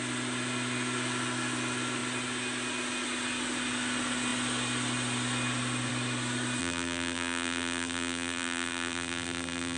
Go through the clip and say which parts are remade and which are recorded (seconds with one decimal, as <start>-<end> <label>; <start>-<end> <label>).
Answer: 0.0-6.6 recorded; 6.6-9.8 remade